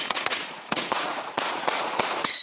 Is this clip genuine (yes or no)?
no